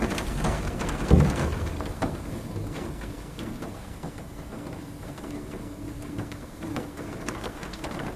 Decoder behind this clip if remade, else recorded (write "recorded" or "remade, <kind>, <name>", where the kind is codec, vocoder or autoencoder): remade, codec, SNAC